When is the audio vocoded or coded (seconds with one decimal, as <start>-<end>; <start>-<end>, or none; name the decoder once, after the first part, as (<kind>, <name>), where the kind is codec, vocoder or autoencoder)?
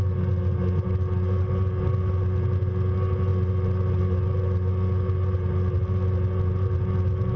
none